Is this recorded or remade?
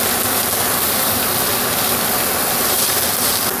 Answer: recorded